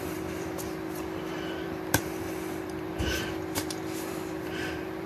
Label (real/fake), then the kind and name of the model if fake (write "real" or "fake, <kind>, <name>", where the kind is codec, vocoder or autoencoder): fake, vocoder, BigVGAN v2